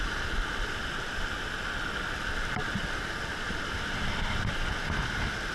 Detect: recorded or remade recorded